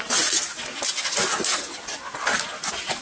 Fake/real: real